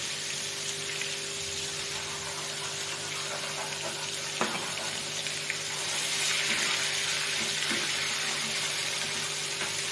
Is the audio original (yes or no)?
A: yes